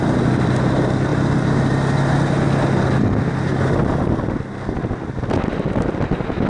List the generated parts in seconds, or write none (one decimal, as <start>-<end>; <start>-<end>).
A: none